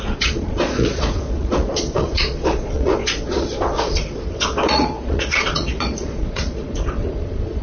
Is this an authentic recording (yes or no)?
no